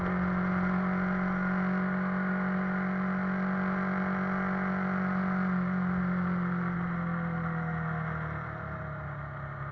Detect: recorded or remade recorded